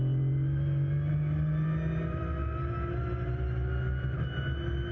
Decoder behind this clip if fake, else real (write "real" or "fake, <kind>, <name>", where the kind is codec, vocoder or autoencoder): real